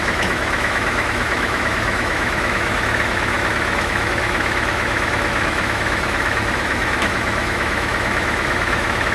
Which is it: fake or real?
fake